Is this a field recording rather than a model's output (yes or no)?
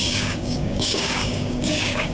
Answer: no